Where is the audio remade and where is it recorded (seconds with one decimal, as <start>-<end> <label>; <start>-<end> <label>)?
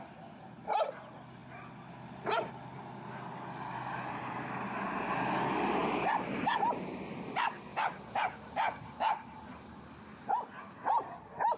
0.0-1.4 recorded; 1.4-2.5 remade; 2.5-5.8 recorded; 5.8-6.4 remade; 6.4-7.7 recorded; 7.7-9.8 remade; 9.8-11.6 recorded